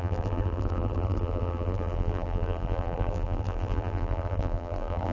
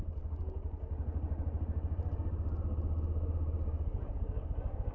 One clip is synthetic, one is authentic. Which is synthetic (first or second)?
first